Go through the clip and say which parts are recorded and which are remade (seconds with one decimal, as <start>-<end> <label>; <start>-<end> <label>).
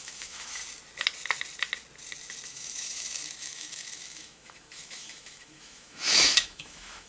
0.0-0.6 remade; 0.6-2.5 recorded; 2.5-7.1 remade